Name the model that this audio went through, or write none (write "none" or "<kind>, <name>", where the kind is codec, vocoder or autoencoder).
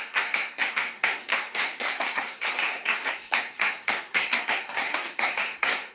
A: codec, SNAC